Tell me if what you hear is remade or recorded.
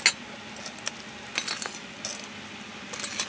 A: recorded